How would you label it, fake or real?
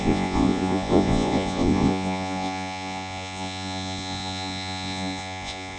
fake